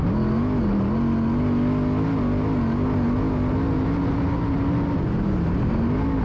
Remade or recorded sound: recorded